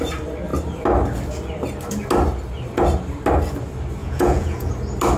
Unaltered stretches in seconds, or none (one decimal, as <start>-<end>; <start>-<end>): 0.0-4.0; 4.7-5.2